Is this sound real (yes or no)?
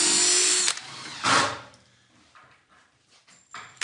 yes